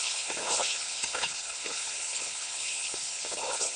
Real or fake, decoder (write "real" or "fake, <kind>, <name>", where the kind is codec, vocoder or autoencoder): fake, codec, HILCodec